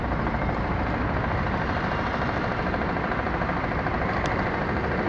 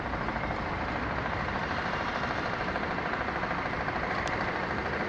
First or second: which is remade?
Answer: second